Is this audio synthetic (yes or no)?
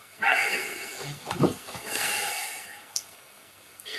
yes